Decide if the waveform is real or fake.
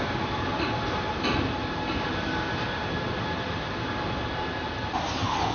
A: real